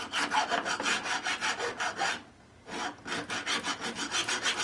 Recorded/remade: recorded